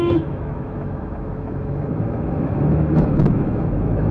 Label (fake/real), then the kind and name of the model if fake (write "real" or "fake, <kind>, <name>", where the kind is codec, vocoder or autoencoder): fake, autoencoder, DAC-VAE